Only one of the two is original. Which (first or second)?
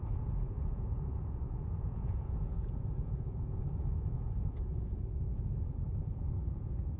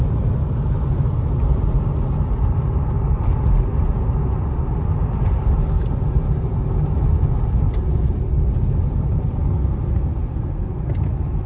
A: second